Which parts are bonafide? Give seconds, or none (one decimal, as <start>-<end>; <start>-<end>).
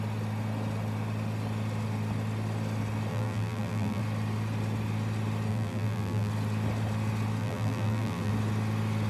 0.0-3.1; 4.0-5.5; 6.3-7.4; 8.3-9.1